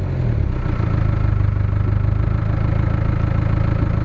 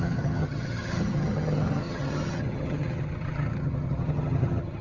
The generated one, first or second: second